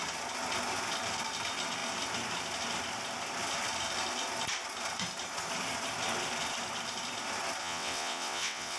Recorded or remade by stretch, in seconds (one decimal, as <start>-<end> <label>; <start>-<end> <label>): 0.0-7.6 recorded; 7.6-8.8 remade